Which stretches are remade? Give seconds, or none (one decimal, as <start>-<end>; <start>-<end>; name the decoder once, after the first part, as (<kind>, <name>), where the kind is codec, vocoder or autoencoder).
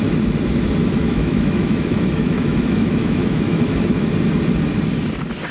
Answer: 0.8-4.1 (autoencoder, DAC-VAE)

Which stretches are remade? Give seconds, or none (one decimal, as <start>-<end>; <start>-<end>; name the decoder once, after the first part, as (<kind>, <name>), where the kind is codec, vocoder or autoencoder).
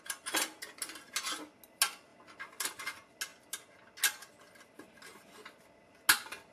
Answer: none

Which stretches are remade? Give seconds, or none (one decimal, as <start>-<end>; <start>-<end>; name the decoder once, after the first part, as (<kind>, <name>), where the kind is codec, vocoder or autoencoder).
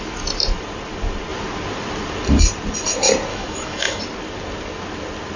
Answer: 3.3-4.0 (autoencoder, DAC-VAE)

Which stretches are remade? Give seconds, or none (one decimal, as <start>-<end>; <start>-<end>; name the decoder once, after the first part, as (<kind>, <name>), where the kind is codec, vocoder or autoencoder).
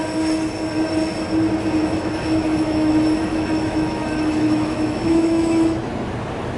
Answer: 1.8-2.9 (autoencoder, DAC-VAE); 3.3-5.9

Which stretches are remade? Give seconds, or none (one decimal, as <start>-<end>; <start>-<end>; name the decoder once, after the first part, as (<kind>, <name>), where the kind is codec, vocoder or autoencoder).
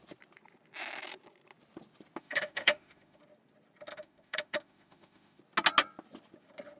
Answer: 2.2-3.2 (autoencoder, DAC-VAE); 3.9-5.4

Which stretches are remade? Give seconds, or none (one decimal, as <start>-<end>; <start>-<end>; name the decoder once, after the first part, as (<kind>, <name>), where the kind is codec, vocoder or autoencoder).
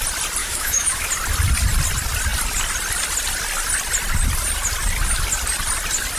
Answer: 0.4-1.1 (autoencoder, DAC-VAE)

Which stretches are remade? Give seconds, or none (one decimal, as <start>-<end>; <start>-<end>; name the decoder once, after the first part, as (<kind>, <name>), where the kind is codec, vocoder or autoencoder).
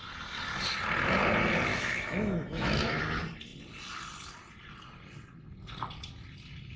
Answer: 1.7-3.0 (autoencoder, DAC-VAE)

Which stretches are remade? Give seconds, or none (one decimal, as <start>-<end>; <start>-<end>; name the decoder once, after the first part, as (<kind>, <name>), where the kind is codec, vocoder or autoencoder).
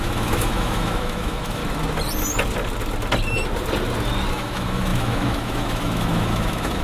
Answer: 0.0-1.6 (autoencoder, DAC-VAE); 4.3-6.8